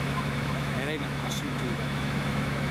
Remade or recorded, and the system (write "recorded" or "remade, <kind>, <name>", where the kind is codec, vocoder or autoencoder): remade, autoencoder, DAC-VAE